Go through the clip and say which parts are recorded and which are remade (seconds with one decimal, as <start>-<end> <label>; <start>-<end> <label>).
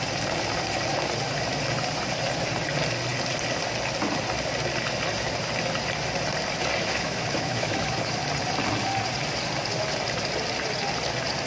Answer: 0.0-6.8 recorded; 6.8-8.1 remade; 8.1-11.5 recorded